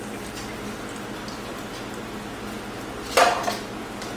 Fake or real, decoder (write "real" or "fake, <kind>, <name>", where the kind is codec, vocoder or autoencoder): real